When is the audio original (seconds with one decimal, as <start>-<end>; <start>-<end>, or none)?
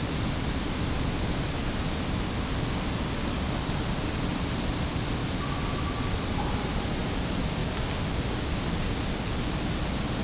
0.0-10.2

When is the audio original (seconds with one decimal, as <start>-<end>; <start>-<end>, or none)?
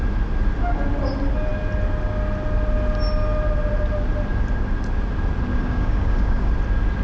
0.0-5.5; 6.5-7.0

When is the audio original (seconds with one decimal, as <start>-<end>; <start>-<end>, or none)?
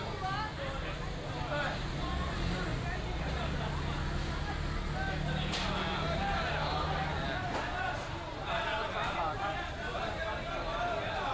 0.0-11.3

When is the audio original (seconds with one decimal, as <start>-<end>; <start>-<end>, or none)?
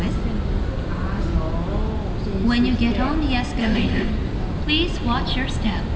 0.0-3.6; 4.1-6.0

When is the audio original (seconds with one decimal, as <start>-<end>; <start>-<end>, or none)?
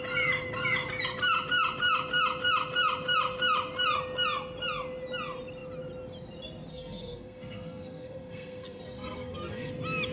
0.0-6.7; 9.7-10.1